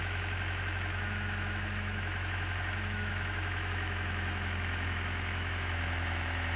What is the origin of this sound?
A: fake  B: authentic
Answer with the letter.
A